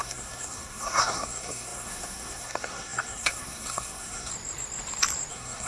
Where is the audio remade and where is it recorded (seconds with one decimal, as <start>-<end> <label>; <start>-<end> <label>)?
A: 0.0-4.3 remade; 4.3-5.3 recorded; 5.3-5.7 remade